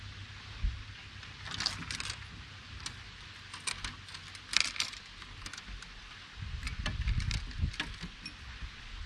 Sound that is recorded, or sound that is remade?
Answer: recorded